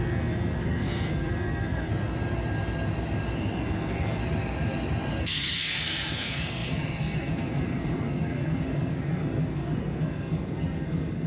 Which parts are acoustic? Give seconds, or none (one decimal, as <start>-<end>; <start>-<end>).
1.9-3.4; 4.2-5.2